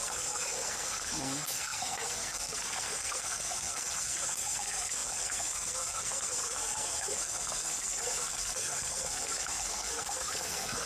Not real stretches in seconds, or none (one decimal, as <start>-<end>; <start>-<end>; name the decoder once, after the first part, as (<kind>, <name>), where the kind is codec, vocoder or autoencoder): 0.0-10.9 (codec, SNAC)